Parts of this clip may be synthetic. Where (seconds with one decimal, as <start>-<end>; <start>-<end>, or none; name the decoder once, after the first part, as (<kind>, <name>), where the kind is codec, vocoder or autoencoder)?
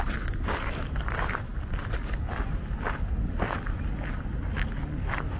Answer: none